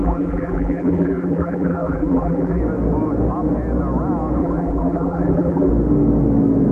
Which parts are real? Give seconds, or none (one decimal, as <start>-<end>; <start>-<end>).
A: 2.6-4.4; 5.7-6.7